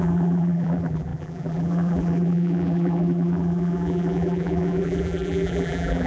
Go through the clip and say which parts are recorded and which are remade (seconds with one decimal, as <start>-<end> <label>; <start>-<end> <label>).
0.0-6.1 remade